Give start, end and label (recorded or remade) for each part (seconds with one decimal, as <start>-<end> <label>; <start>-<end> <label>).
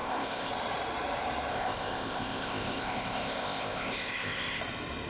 0.0-0.5 remade; 0.5-1.5 recorded; 1.5-4.6 remade; 4.6-5.1 recorded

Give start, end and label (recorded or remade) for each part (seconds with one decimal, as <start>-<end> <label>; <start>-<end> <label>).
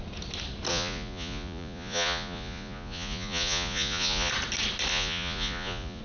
0.0-0.7 recorded; 0.7-4.3 remade; 4.3-4.9 recorded; 4.9-6.0 remade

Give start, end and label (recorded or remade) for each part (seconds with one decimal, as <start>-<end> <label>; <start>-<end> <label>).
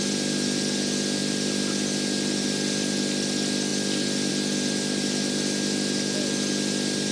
0.0-7.1 recorded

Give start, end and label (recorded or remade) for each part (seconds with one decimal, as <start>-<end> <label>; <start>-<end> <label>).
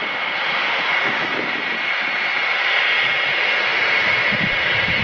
0.0-5.0 recorded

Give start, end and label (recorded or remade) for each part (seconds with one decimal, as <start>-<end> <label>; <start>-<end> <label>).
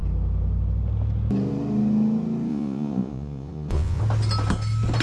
0.0-2.5 recorded; 2.5-4.0 remade; 4.0-5.0 recorded